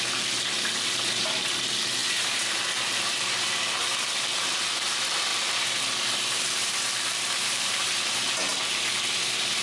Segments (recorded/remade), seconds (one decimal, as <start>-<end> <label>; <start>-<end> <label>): 0.0-2.0 recorded; 2.0-2.6 remade; 2.6-5.3 recorded; 5.3-8.3 remade; 8.3-9.6 recorded